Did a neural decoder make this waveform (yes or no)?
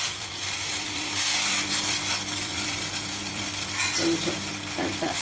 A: yes